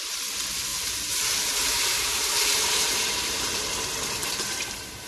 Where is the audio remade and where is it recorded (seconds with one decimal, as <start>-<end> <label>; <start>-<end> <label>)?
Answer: 0.0-0.7 recorded; 0.7-3.8 remade; 3.8-4.2 recorded; 4.2-5.1 remade